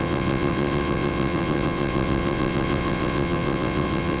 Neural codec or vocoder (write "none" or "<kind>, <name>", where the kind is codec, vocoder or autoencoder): vocoder, WaveNeXt